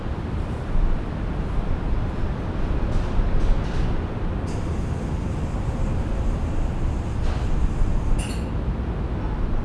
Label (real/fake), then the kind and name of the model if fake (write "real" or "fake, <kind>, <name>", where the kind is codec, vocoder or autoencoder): real